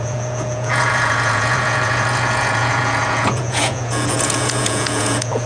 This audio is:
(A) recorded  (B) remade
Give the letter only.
B